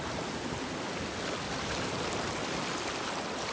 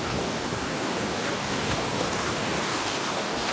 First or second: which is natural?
first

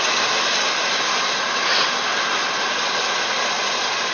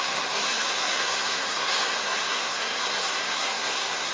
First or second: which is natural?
first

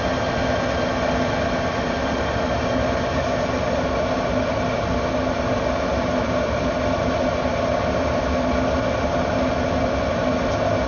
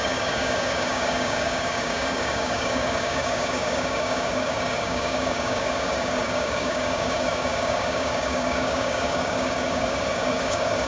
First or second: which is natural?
first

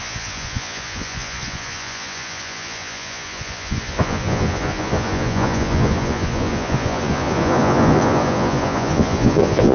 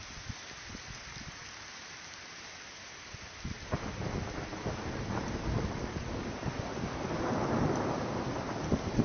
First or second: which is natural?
second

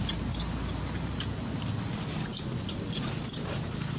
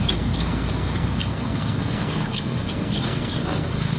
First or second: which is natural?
first